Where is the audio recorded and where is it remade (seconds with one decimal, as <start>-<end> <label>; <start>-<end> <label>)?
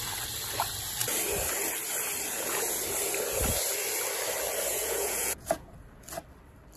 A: 0.0-4.7 recorded; 4.7-5.7 remade; 5.7-6.8 recorded